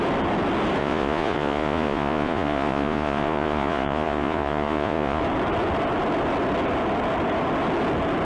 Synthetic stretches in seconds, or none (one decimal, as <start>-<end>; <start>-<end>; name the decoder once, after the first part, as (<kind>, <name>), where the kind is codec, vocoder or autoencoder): 0.8-5.2 (vocoder, Vocos)